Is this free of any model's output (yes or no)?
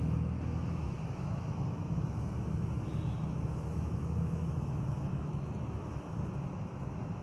no